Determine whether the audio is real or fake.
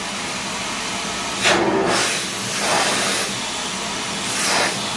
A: real